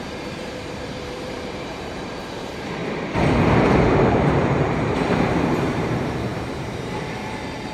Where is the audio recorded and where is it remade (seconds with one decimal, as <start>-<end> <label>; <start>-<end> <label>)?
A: 0.0-2.8 remade; 2.8-4.1 recorded; 4.1-7.7 remade